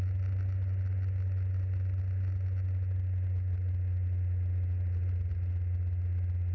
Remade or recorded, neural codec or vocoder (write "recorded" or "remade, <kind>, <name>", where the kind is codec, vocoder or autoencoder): recorded